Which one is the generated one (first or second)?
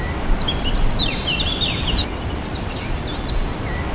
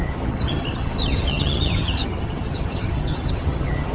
second